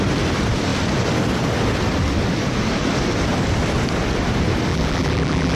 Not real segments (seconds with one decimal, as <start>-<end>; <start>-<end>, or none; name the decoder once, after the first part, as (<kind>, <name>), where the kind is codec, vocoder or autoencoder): 4.7-5.6 (vocoder, BigVGAN v2)